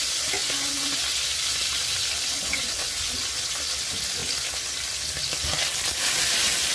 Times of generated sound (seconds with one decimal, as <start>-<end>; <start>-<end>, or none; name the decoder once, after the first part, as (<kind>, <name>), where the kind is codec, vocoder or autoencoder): 0.4-1.0 (vocoder, Vocos); 2.3-2.9